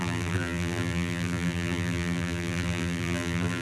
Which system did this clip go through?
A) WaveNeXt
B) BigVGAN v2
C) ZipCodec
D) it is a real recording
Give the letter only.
B